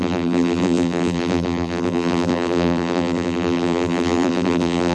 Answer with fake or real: fake